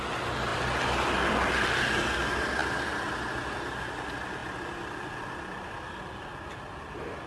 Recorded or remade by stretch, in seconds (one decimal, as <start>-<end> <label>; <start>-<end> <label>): 0.0-7.3 recorded